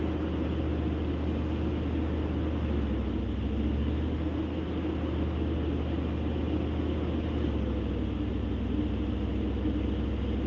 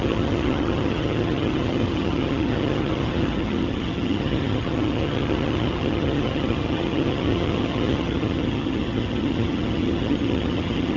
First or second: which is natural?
first